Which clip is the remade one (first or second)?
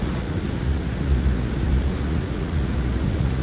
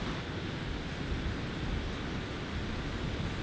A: first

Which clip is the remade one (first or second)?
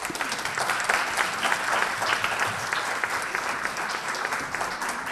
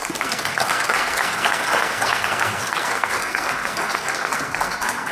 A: second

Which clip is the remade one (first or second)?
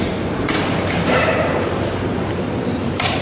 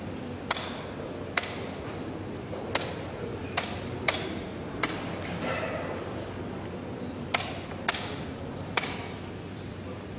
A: first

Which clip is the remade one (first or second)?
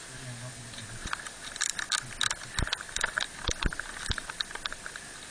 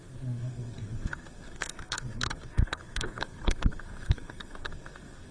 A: second